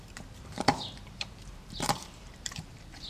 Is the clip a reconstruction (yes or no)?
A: yes